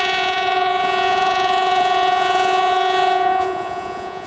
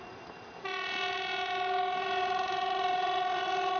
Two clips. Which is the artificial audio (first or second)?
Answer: first